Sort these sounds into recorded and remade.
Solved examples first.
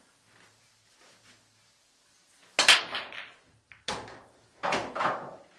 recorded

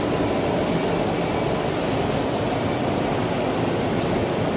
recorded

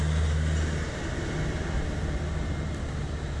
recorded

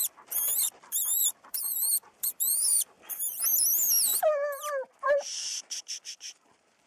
remade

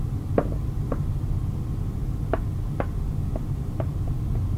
recorded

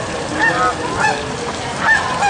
recorded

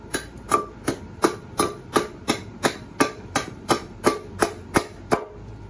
remade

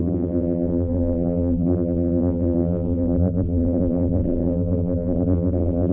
remade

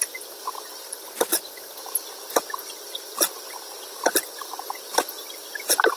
recorded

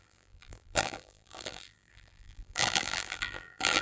remade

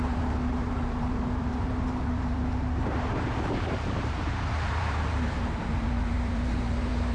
remade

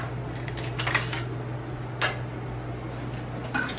recorded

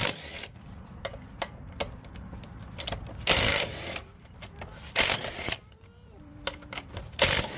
remade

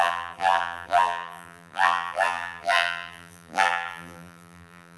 remade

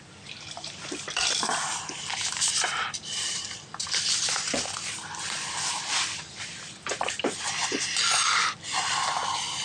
remade